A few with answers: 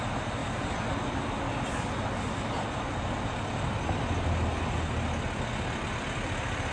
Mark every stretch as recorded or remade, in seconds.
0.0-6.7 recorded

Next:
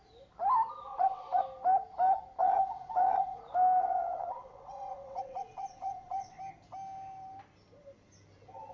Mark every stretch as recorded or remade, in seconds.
0.0-0.9 recorded; 0.9-1.4 remade; 1.4-2.4 recorded; 2.4-3.4 remade; 3.4-3.8 recorded; 3.8-6.4 remade; 6.4-8.7 recorded

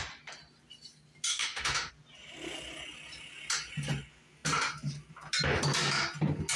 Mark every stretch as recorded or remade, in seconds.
0.0-1.3 recorded; 1.3-1.9 remade; 1.9-6.6 recorded

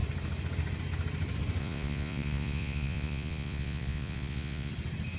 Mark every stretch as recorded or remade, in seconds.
0.0-1.6 recorded; 1.6-4.7 remade; 4.7-5.2 recorded

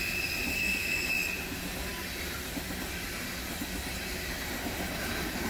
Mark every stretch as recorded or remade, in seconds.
0.0-0.5 recorded; 0.5-1.1 remade; 1.1-5.5 recorded

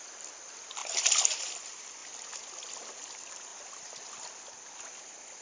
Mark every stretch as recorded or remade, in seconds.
0.0-0.8 remade; 0.8-1.4 recorded; 1.4-2.0 remade; 2.0-2.9 recorded; 2.9-5.4 remade

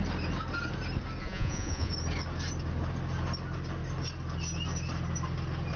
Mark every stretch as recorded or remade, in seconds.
0.0-1.2 recorded; 1.2-1.9 remade; 1.9-5.8 recorded

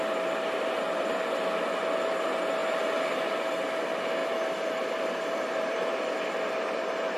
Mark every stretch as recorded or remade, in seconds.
0.0-4.2 recorded; 4.2-6.2 remade; 6.2-7.2 recorded